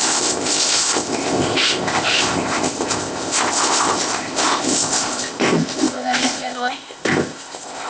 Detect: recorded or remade remade